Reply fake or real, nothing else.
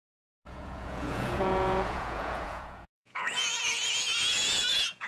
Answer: fake